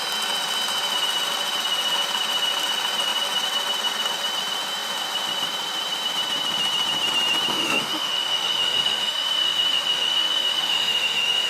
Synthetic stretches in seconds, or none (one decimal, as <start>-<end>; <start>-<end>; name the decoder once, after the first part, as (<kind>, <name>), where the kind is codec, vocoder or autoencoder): 7.5-11.5 (autoencoder, DAC-VAE)